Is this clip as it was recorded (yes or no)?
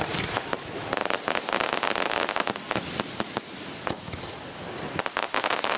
yes